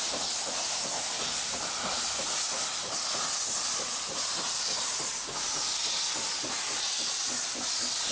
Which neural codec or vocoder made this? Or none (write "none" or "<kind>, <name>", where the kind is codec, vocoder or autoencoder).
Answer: none